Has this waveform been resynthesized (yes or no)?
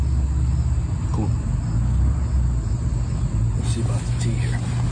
no